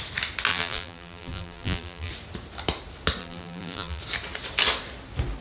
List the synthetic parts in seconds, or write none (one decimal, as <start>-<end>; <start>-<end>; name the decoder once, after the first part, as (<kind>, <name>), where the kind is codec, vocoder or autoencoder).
0.5-2.1 (vocoder, BigVGAN v2); 3.2-4.0